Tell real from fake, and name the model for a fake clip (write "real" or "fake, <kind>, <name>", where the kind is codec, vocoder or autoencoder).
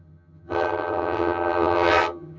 fake, vocoder, HiFi-GAN